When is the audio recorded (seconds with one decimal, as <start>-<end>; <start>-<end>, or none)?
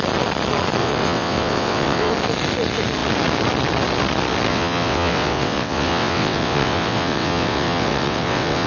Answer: 0.0-0.8; 2.1-4.5